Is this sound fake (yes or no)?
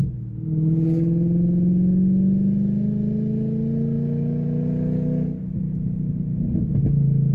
no